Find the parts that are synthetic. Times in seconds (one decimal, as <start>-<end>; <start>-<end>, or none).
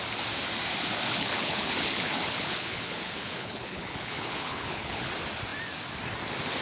1.1-5.1